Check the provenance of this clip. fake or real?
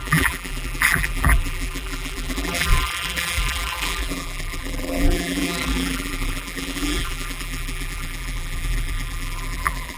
fake